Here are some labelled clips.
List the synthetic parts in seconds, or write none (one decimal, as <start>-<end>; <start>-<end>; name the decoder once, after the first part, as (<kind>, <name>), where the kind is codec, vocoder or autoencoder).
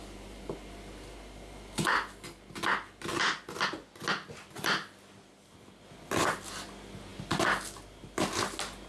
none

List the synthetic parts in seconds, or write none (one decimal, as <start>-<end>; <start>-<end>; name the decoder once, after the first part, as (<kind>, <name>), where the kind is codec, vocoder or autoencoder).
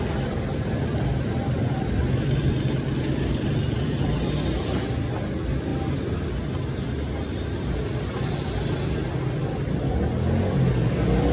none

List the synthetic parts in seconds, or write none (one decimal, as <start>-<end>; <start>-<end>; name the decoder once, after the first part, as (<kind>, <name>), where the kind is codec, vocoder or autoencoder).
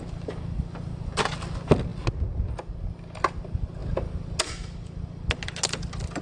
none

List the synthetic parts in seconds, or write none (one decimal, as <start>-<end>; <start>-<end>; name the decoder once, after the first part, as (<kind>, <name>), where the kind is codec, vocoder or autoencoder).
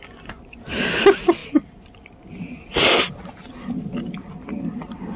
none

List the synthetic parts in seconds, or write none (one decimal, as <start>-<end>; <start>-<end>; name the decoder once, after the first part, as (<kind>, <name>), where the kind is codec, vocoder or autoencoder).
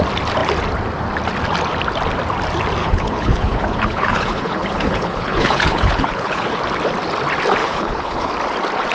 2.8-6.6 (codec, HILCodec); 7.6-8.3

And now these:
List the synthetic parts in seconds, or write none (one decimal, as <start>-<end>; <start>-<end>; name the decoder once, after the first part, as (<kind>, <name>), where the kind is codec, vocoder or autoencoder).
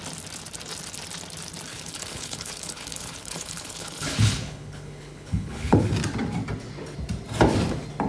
1.7-5.8 (codec, HILCodec)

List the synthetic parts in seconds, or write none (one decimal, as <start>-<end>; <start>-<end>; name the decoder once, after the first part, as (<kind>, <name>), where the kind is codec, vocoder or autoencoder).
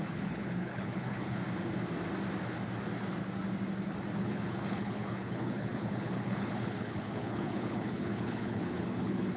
0.0-1.4 (codec, HILCodec); 4.2-9.4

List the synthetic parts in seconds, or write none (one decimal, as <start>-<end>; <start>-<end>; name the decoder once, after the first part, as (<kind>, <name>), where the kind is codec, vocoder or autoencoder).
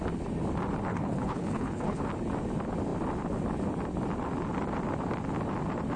0.9-2.0 (codec, HILCodec)